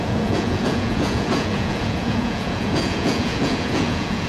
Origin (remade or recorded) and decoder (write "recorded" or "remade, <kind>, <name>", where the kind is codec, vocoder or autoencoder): remade, vocoder, Vocos